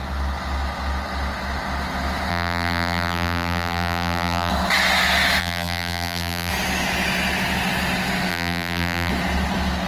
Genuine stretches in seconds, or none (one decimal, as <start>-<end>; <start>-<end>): 0.0-2.3; 4.5-5.4; 6.5-8.3; 9.1-9.9